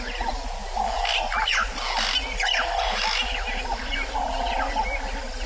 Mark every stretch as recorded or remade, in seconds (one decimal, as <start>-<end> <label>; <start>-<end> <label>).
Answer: 0.0-5.5 recorded